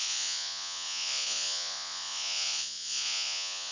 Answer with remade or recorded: remade